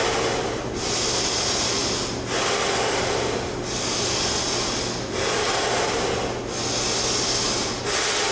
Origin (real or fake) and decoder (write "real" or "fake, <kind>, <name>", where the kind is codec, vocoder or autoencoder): real